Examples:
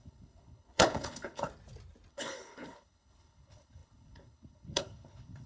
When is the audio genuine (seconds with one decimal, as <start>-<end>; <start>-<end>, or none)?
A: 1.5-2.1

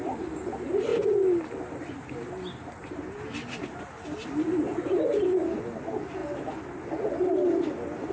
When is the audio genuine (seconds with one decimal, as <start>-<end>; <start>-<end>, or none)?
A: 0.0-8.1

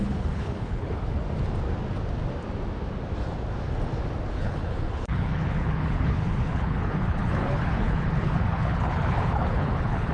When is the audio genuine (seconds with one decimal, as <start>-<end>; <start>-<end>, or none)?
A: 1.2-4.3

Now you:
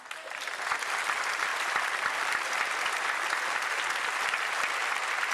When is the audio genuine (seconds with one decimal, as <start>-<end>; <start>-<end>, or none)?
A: 0.0-1.5; 4.7-5.3

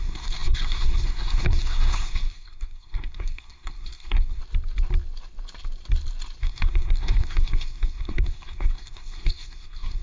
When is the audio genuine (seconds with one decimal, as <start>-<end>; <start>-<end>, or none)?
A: 4.4-6.4